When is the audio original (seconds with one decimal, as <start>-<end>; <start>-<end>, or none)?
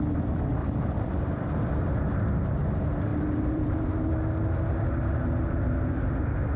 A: 0.0-0.6; 1.1-3.1; 3.8-6.6